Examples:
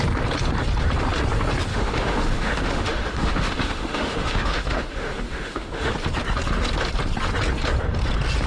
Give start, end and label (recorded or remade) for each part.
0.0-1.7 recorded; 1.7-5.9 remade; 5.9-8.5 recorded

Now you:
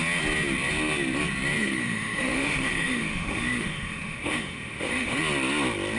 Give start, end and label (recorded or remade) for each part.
0.0-1.6 recorded; 1.6-5.2 remade; 5.2-6.0 recorded

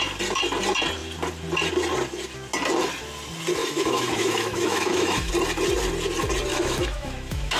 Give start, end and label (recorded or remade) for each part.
0.0-3.6 recorded; 3.6-5.3 remade; 5.3-6.5 recorded; 6.5-7.6 remade

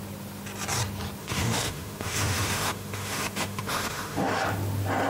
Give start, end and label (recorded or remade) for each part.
0.0-1.2 recorded; 1.2-4.3 remade; 4.3-5.1 recorded

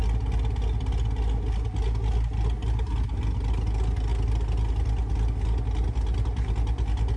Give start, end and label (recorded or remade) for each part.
0.0-7.2 recorded

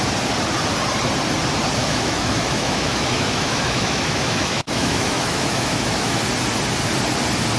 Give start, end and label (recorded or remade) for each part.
0.0-1.8 recorded; 1.8-6.2 remade; 6.2-7.6 recorded

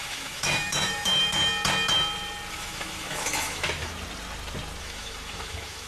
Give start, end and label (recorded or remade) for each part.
0.0-1.4 remade; 1.4-2.5 recorded; 2.5-3.9 remade; 3.9-4.8 recorded; 4.8-5.9 remade

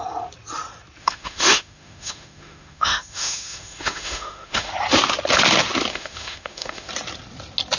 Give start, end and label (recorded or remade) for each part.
0.0-1.0 recorded; 1.0-4.7 remade; 4.7-5.9 recorded; 5.9-6.9 remade; 6.9-7.8 recorded